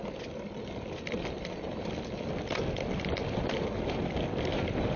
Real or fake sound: real